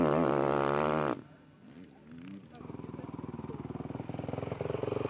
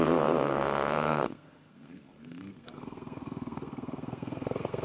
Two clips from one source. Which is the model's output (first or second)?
second